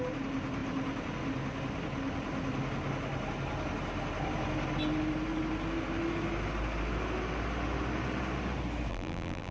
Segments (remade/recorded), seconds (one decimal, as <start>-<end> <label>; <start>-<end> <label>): 0.0-8.9 recorded; 8.9-9.5 remade